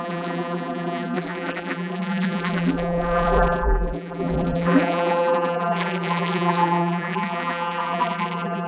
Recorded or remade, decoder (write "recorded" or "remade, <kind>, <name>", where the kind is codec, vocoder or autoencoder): remade, vocoder, BigVGAN v2